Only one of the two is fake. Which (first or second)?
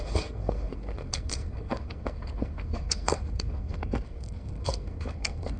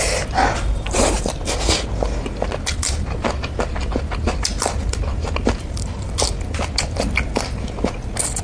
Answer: first